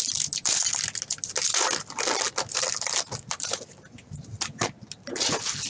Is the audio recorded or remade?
recorded